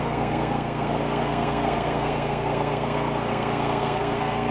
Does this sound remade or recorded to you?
remade